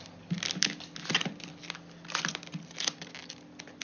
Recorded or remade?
recorded